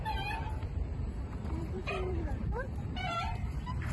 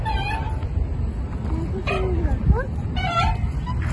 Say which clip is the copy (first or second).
first